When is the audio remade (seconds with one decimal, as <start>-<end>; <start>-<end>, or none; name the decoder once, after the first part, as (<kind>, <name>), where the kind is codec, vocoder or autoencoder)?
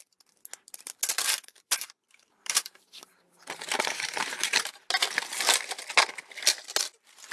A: 1.1-4.9 (vocoder, BigVGAN v2)